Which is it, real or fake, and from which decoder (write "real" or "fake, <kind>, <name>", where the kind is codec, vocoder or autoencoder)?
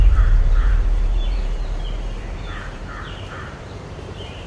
fake, vocoder, BigVGAN v2